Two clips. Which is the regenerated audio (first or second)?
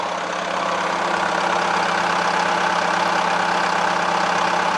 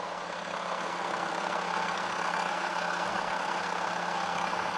second